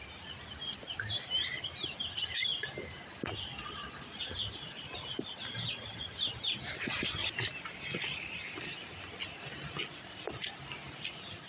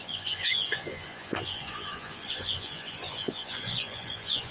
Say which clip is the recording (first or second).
first